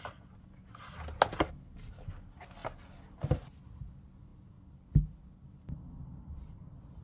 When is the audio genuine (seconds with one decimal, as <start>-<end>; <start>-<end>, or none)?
0.0-7.0